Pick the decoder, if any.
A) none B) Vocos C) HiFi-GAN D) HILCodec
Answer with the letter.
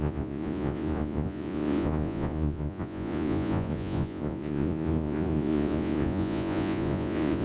B